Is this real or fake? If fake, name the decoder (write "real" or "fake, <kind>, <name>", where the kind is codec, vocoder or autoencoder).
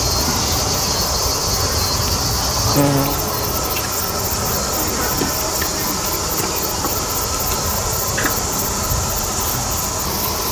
real